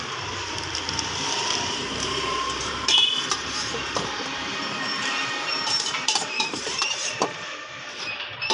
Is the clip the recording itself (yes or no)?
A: no